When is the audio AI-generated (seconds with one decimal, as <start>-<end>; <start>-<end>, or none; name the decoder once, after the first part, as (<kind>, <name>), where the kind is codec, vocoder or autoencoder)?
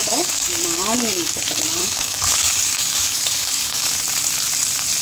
0.0-1.4 (codec, DAC); 1.8-4.0